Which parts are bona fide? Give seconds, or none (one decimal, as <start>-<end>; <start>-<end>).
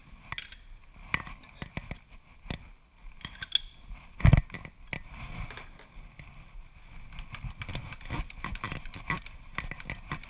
0.0-10.3